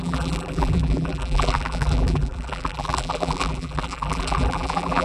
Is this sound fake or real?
fake